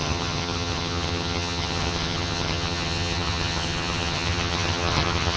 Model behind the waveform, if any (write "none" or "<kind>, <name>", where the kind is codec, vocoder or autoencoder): vocoder, HiFi-GAN